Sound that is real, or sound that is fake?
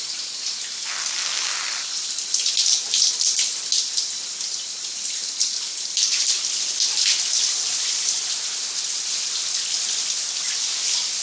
real